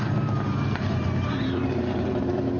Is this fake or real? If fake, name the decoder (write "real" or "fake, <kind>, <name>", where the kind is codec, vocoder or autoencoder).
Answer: fake, vocoder, BigVGAN v2